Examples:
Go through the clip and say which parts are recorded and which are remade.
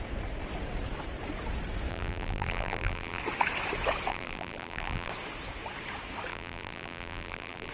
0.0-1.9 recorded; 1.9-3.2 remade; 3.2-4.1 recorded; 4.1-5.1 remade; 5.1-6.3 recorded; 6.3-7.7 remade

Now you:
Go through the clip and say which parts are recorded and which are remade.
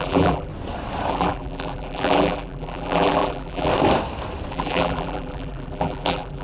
0.0-0.5 remade; 0.5-1.1 recorded; 1.1-3.7 remade; 3.7-4.5 recorded; 4.5-6.4 remade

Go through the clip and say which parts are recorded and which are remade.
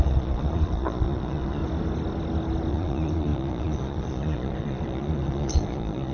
0.0-1.6 remade; 1.6-2.7 recorded; 2.7-6.1 remade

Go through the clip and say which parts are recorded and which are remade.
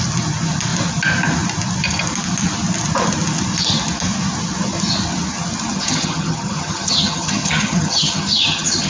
0.0-5.7 recorded; 5.7-8.9 remade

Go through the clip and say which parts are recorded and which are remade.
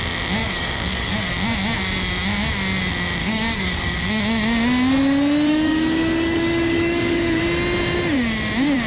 0.0-0.4 recorded; 0.4-1.3 remade; 1.3-3.2 recorded; 3.2-4.2 remade; 4.2-5.5 recorded; 5.5-7.4 remade; 7.4-8.9 recorded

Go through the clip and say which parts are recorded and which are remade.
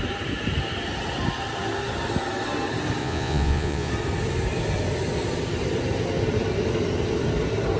0.0-3.0 recorded; 3.0-3.9 remade; 3.9-7.8 recorded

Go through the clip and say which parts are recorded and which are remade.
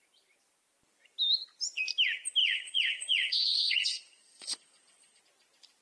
0.0-2.4 recorded; 2.4-5.2 remade; 5.2-5.8 recorded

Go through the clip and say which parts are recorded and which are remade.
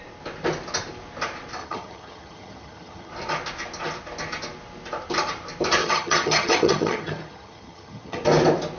0.0-1.6 recorded; 1.6-3.1 remade; 3.1-5.8 recorded; 5.8-8.2 remade; 8.2-8.8 recorded